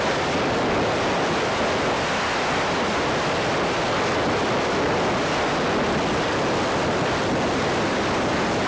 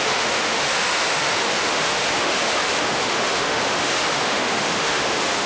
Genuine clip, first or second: first